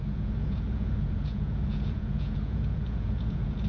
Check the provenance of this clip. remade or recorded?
remade